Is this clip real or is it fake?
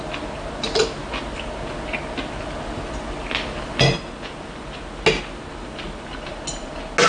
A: real